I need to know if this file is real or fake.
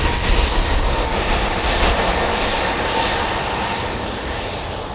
real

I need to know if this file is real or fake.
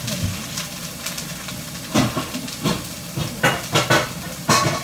real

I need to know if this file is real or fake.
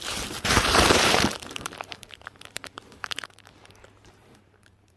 fake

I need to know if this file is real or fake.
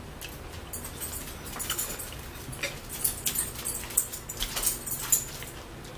real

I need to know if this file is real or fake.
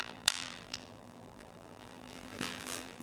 fake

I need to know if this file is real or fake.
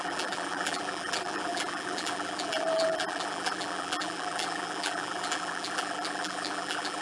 fake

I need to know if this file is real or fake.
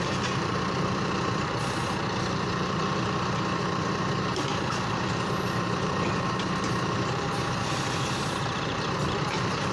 fake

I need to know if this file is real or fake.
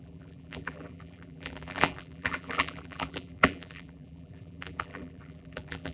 fake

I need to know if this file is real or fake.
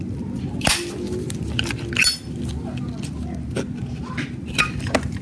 real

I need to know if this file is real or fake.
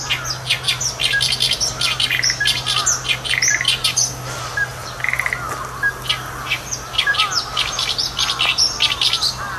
real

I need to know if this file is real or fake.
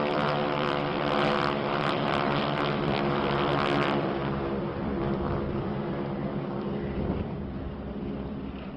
fake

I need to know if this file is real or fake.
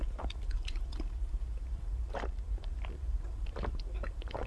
fake